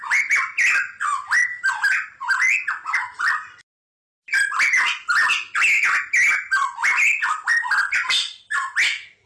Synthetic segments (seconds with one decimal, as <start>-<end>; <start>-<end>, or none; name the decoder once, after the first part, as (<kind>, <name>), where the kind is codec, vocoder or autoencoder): none